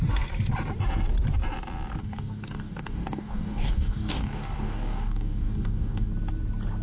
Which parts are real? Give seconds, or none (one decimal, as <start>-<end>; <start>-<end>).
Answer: 0.0-2.0; 6.1-6.8